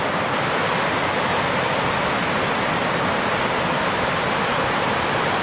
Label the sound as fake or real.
real